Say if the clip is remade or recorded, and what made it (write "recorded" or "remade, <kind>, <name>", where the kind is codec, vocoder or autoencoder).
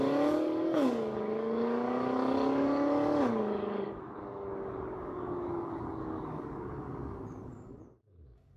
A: remade, codec, DAC